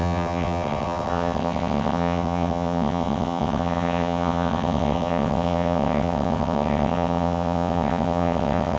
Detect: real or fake fake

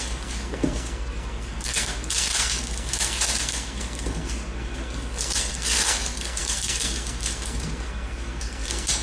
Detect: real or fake fake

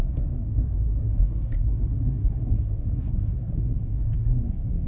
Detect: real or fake fake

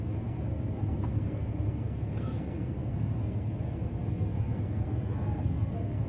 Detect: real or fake fake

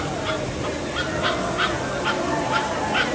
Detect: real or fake real